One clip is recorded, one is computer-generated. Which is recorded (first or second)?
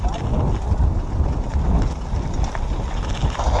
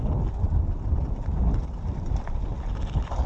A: first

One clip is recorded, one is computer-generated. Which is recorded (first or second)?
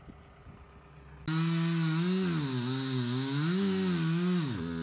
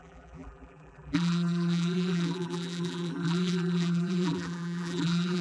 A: first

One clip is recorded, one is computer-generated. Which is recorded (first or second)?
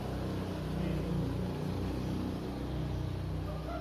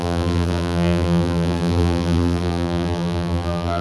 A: first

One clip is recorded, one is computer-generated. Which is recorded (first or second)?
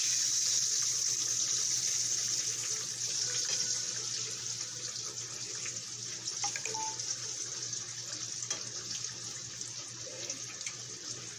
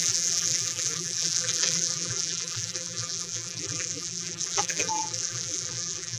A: first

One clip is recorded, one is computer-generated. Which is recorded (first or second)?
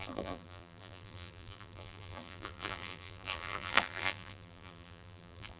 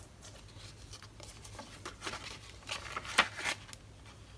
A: second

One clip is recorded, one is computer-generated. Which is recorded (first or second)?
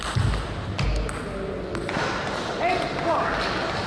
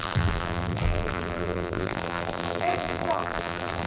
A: first